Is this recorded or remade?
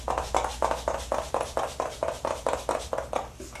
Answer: recorded